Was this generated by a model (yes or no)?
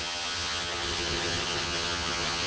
yes